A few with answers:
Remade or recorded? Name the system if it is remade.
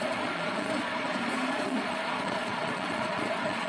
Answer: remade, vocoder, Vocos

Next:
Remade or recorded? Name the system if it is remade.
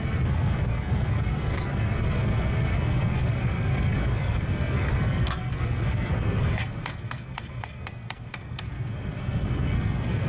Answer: remade, codec, SNAC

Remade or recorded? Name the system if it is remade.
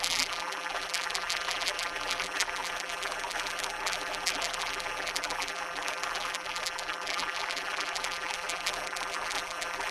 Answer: remade, vocoder, BigVGAN v2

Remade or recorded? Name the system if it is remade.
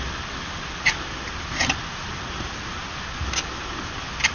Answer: recorded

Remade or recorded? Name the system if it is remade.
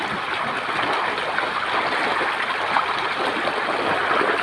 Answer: recorded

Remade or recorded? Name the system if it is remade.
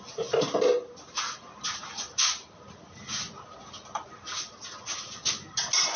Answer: recorded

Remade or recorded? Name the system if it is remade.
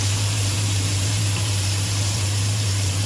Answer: remade, vocoder, BigVGAN v2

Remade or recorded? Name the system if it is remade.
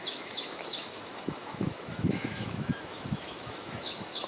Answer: remade, autoencoder, DAC-VAE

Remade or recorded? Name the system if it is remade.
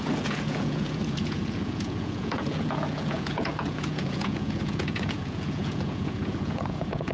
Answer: remade, vocoder, Vocos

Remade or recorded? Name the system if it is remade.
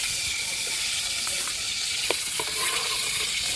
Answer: remade, vocoder, Vocos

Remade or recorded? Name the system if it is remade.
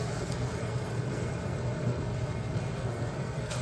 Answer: remade, codec, SNAC